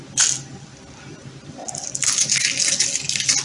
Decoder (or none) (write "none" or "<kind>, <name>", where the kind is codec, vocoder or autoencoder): none